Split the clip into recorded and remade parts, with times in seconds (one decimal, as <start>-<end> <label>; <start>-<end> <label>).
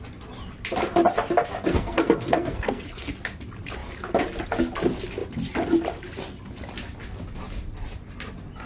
0.0-1.7 recorded; 1.7-3.1 remade; 3.1-8.7 recorded